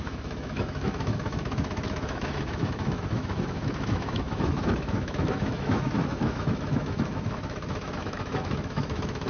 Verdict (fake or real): fake